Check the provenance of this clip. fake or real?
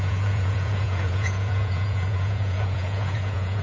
fake